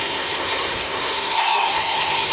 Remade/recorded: remade